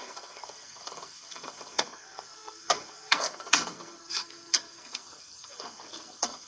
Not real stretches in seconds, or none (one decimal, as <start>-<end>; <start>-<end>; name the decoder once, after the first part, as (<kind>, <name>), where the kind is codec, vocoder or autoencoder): 0.0-6.5 (codec, SNAC)